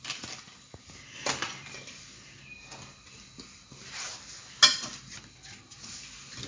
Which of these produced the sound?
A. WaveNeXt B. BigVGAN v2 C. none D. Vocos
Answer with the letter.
C